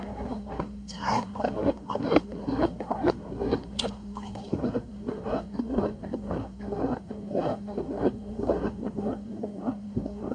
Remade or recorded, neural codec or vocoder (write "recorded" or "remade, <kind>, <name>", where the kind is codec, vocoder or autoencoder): remade, codec, SNAC